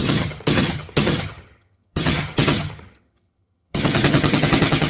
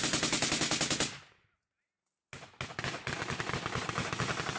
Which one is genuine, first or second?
second